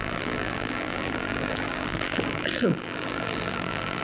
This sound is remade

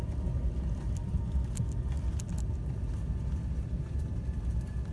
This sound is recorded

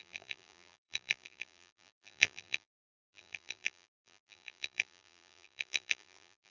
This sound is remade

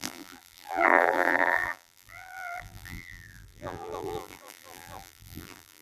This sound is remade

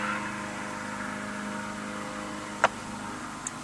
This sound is recorded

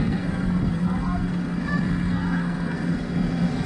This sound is remade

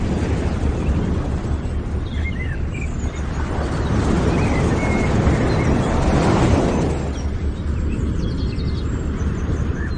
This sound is recorded